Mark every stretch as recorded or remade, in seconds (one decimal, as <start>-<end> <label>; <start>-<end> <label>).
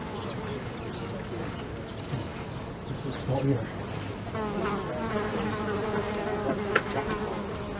0.0-7.8 recorded